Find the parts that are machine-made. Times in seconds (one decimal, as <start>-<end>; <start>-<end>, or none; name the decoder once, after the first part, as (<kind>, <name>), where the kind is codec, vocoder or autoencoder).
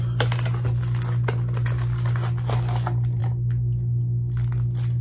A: none